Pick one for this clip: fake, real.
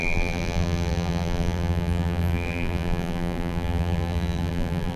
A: fake